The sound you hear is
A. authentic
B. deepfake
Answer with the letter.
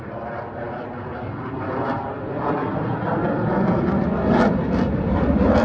A